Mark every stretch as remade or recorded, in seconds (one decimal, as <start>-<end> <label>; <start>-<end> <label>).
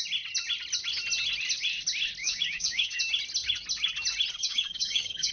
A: 0.0-2.2 recorded; 2.2-3.0 remade; 3.0-4.4 recorded; 4.4-5.3 remade